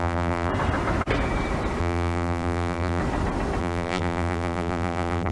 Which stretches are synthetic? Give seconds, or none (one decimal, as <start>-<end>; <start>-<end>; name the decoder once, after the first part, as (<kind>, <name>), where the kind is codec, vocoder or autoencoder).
0.0-0.5 (vocoder, BigVGAN v2); 1.8-3.0; 3.6-5.3